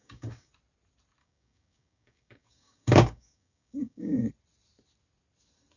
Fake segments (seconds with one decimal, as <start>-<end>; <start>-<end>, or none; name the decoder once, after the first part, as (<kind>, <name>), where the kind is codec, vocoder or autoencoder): 0.0-0.5 (codec, DAC); 1.2-4.3